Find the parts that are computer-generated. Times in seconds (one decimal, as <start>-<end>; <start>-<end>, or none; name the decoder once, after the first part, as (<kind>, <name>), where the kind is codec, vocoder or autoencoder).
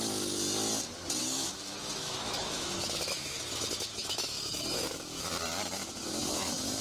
1.2-5.3 (autoencoder, DAC-VAE); 5.8-6.8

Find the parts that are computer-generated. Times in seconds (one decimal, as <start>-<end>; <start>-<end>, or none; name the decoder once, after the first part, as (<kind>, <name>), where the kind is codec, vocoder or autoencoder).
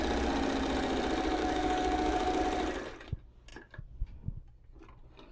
1.4-2.4 (codec, DAC)